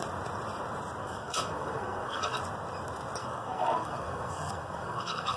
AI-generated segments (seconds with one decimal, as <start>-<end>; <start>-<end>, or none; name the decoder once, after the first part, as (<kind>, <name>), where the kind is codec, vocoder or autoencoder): 1.0-2.4 (codec, SNAC); 3.2-5.4